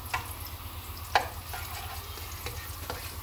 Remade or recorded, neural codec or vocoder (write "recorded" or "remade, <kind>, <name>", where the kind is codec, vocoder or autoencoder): recorded